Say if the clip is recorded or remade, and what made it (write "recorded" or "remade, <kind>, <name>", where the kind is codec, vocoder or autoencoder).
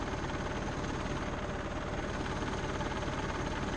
recorded